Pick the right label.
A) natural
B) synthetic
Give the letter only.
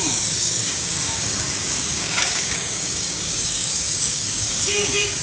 B